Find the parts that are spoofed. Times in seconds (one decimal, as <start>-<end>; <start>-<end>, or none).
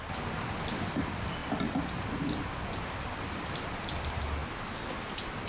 0.0-1.4; 2.7-5.5